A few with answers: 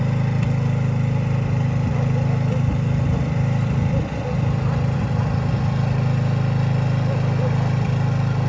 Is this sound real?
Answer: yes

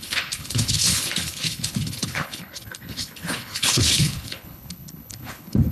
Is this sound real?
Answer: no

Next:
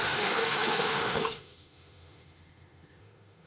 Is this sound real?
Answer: no